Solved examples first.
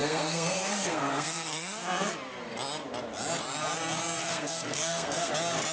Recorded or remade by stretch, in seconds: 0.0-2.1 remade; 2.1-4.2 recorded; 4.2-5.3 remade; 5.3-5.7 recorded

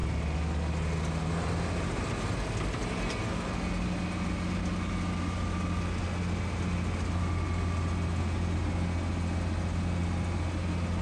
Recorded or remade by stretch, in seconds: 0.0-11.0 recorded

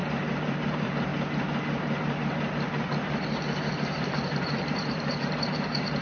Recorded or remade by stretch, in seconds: 0.0-0.7 recorded; 0.7-1.1 remade; 1.1-3.7 recorded; 3.7-6.0 remade

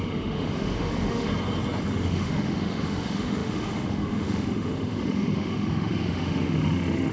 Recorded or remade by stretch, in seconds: 0.0-1.3 remade; 1.3-1.9 recorded; 1.9-7.1 remade

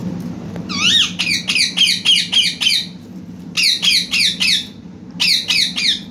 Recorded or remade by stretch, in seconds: 0.0-6.1 recorded